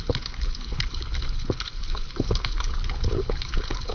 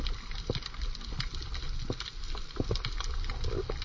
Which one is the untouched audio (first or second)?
second